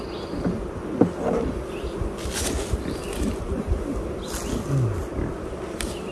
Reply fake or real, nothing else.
real